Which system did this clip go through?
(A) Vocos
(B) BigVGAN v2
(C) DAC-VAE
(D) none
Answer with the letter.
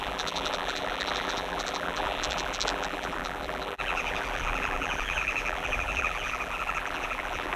B